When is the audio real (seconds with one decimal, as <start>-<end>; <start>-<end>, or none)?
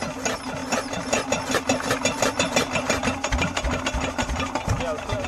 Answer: 0.0-5.3